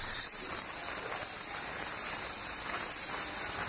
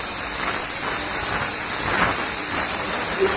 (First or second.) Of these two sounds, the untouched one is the second